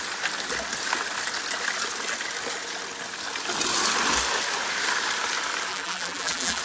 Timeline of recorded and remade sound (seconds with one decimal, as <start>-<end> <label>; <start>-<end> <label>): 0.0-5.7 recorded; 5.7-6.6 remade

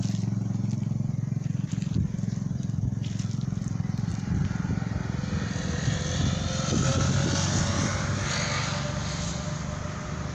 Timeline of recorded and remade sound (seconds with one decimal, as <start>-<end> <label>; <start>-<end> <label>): 0.0-10.3 recorded

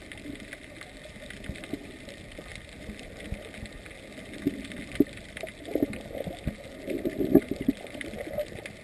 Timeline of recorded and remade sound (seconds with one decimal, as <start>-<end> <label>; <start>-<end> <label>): 0.0-8.8 recorded